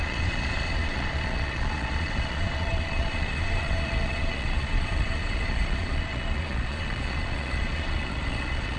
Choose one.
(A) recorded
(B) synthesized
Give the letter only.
B